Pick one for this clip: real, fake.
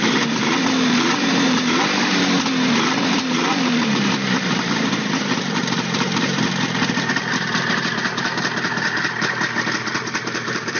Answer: fake